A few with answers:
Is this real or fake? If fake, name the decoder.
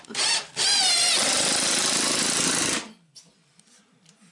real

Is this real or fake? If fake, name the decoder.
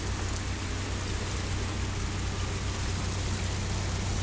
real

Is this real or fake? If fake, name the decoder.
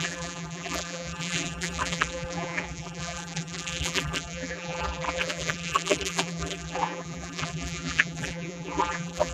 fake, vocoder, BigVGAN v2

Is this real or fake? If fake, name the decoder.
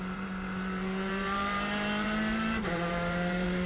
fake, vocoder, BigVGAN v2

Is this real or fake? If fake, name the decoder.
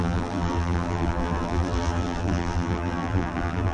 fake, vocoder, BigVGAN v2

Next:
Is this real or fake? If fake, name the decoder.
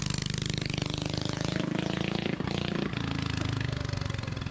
fake, vocoder, BigVGAN v2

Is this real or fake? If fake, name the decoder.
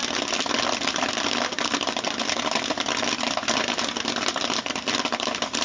fake, vocoder, BigVGAN v2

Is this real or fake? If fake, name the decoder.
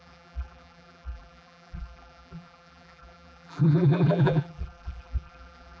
fake, vocoder, BigVGAN v2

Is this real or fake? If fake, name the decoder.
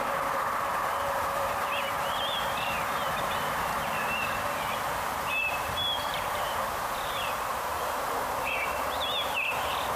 fake, vocoder, BigVGAN v2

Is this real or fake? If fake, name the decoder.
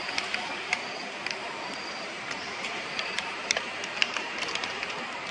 fake, vocoder, BigVGAN v2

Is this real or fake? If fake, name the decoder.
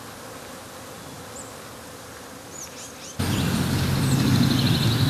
real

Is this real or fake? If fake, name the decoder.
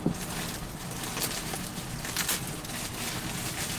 real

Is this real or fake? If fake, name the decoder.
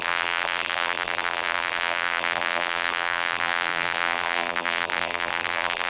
fake, vocoder, BigVGAN v2